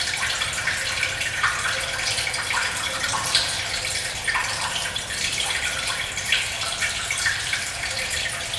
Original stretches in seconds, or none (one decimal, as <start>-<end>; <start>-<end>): 0.0-2.6; 3.6-4.4; 8.1-8.6